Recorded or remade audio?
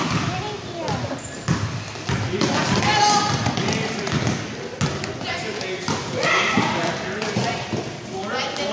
recorded